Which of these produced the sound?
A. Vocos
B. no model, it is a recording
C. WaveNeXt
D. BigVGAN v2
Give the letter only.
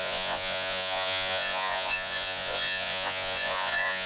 A